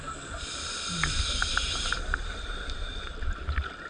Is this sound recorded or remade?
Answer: recorded